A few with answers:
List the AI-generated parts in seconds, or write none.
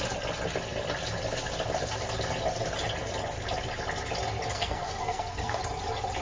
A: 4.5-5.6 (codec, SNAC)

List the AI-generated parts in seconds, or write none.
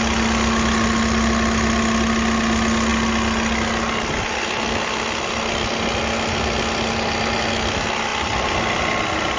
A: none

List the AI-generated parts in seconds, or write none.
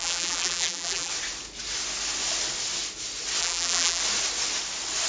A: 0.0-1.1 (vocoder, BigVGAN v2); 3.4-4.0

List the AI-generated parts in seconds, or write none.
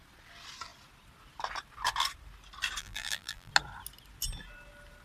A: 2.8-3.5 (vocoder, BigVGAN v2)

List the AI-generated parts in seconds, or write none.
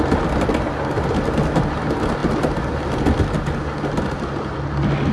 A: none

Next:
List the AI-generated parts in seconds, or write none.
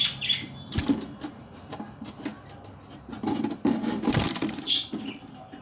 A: 0.8-4.2 (vocoder, BigVGAN v2)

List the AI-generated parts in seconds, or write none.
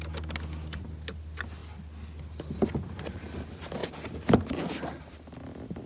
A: none